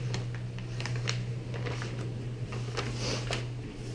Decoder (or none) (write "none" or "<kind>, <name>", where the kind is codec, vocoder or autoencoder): none